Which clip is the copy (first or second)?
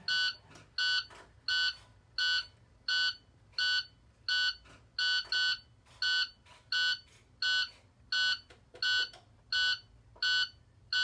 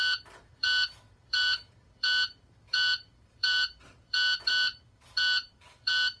second